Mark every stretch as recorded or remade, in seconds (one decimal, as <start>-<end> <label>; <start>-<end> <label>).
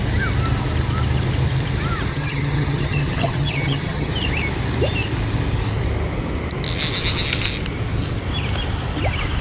0.0-2.1 recorded; 2.1-4.1 remade; 4.1-9.4 recorded